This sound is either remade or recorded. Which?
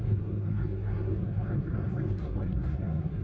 remade